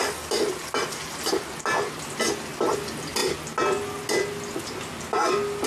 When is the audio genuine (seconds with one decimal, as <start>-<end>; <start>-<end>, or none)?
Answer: 0.0-5.7